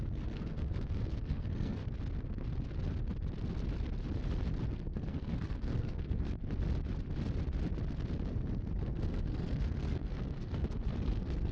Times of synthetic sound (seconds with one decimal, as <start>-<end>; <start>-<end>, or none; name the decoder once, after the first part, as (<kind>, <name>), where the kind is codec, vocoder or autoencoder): 0.0-1.8 (codec, SNAC); 4.7-6.4; 8.8-11.5